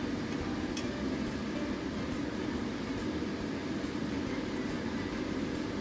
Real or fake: real